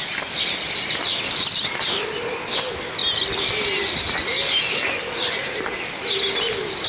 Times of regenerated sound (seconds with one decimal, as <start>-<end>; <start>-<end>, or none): 0.0-1.0; 1.5-3.0; 4.9-6.9